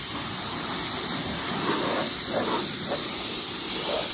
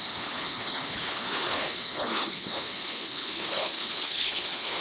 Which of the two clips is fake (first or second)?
second